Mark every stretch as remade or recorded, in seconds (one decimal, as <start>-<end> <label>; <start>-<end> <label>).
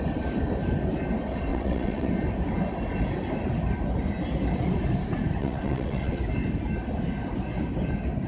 0.0-1.5 recorded; 1.5-2.1 remade; 2.1-5.4 recorded; 5.4-6.2 remade; 6.2-8.3 recorded